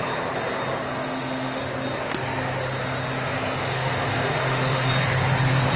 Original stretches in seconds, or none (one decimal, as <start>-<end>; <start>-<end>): 0.0-0.9; 1.6-3.6; 4.9-5.8